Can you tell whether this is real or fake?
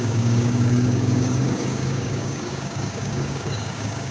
fake